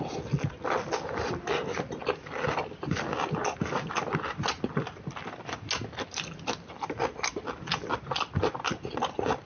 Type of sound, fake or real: real